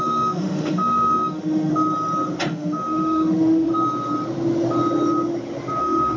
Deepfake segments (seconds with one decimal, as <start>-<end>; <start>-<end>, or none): 0.0-1.7; 2.5-3.7; 5.8-6.2